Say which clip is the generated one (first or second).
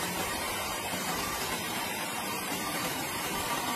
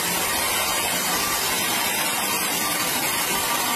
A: first